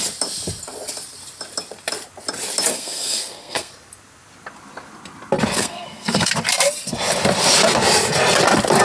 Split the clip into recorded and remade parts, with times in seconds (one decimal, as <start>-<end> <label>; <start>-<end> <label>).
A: 0.0-2.7 recorded; 2.7-3.7 remade; 3.7-5.6 recorded; 5.6-6.3 remade; 6.3-8.8 recorded